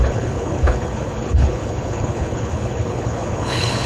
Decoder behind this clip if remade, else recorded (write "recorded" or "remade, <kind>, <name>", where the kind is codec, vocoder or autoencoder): remade, codec, HILCodec